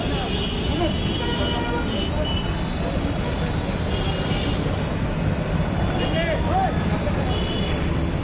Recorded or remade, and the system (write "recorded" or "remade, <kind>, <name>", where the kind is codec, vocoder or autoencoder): recorded